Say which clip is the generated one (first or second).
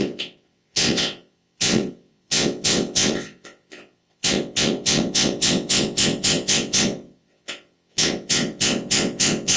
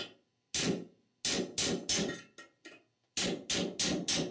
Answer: first